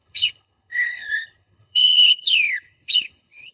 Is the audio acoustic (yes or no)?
no